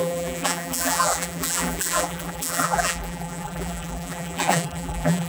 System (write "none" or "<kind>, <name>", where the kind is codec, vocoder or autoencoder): vocoder, BigVGAN v2